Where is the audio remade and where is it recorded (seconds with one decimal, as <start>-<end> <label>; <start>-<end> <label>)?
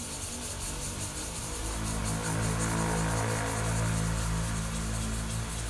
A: 0.0-2.0 remade; 2.0-5.7 recorded